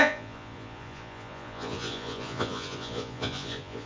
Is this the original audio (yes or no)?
no